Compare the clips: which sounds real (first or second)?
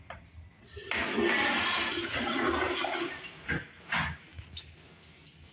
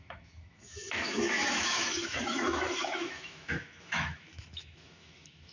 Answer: first